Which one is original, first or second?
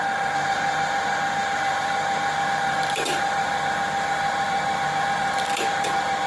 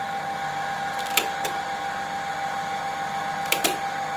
second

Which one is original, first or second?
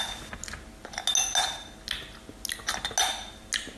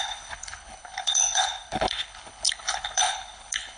first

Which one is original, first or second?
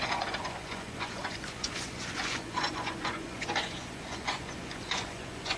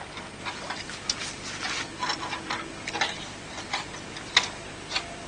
second